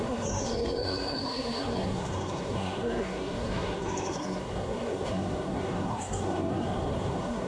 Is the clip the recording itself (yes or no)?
no